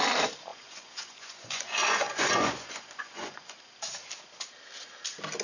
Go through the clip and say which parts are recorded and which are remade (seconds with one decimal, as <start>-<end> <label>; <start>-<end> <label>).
0.0-0.5 recorded; 0.5-3.7 remade; 3.7-5.4 recorded